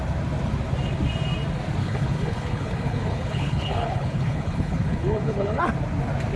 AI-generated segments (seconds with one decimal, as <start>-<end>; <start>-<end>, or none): 1.8-5.6